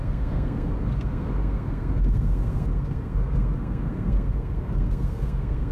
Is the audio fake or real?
fake